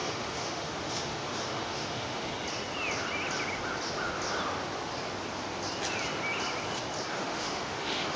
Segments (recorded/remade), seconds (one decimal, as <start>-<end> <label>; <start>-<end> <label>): 0.0-2.3 remade; 2.3-7.1 recorded; 7.1-8.2 remade